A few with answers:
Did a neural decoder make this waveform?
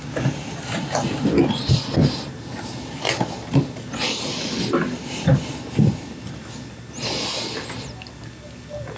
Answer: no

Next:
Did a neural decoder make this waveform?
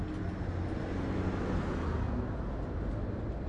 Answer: no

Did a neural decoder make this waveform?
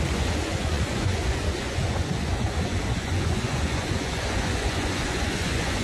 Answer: yes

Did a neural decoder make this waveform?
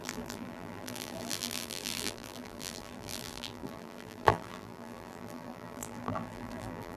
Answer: yes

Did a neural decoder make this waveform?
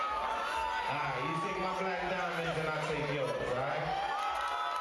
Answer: no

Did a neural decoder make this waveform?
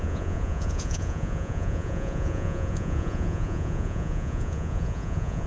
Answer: yes